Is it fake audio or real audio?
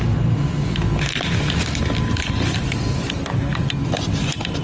real